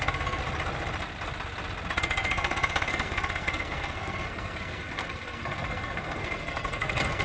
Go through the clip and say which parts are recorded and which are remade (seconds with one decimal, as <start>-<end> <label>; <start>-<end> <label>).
0.0-0.4 remade; 0.4-2.0 recorded; 2.0-7.2 remade